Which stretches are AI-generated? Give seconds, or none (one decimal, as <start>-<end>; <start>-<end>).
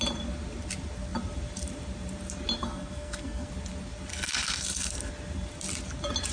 2.6-3.5; 4.1-5.1